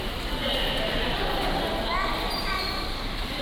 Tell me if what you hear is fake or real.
real